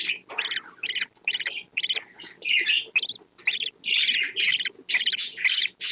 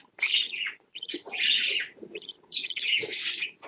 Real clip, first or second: first